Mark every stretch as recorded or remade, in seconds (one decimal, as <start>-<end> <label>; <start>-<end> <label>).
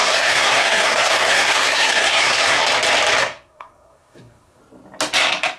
0.0-2.6 remade; 2.6-3.2 recorded; 3.2-4.6 remade; 4.6-5.6 recorded